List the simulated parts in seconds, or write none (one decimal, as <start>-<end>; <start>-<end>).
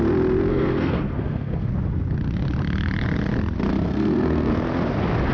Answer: 0.5-1.7; 3.7-4.5